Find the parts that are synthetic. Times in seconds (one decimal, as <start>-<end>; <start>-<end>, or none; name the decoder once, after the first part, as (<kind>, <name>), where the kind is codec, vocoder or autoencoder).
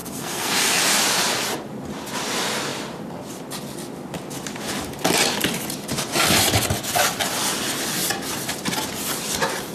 0.0-0.8 (codec, SNAC)